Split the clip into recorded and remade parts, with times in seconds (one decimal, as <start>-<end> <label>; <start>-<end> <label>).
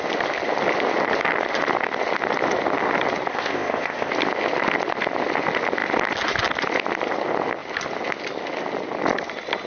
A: 0.0-3.3 recorded; 3.3-4.1 remade; 4.1-9.7 recorded